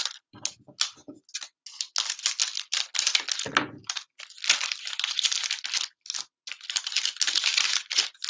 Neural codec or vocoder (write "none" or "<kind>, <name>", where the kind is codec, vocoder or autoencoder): none